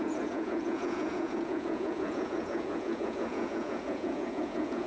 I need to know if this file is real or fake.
fake